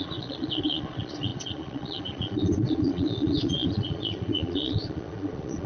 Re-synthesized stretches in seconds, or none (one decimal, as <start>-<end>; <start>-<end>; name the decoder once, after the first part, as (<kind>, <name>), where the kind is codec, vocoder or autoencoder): 0.0-5.7 (vocoder, Vocos)